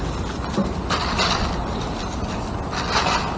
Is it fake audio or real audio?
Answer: real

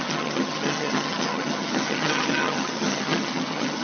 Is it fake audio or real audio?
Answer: fake